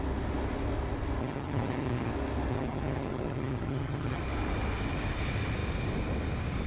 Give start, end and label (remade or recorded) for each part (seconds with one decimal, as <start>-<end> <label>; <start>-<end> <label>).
0.0-1.2 recorded; 1.2-2.1 remade; 2.1-2.5 recorded; 2.5-4.2 remade; 4.2-6.7 recorded